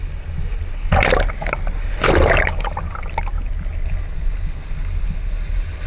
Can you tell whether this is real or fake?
real